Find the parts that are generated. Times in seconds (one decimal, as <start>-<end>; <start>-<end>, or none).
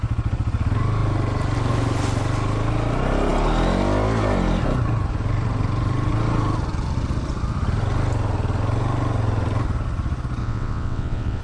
10.4-11.4